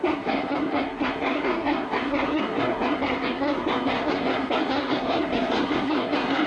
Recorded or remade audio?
remade